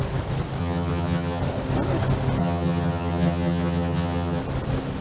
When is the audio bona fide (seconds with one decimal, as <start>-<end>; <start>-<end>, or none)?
0.0-0.6; 1.4-2.4; 4.4-5.0